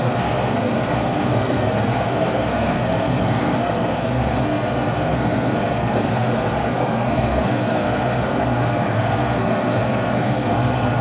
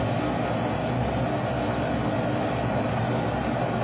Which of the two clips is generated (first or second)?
first